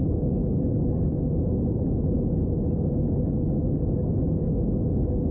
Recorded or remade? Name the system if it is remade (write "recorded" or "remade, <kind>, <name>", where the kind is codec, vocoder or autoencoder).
recorded